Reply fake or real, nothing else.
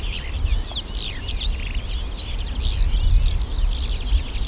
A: real